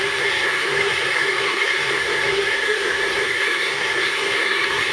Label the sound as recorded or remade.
remade